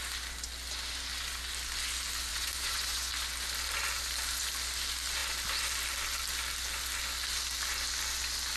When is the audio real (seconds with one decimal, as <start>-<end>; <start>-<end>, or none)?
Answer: 0.0-2.3; 3.1-8.6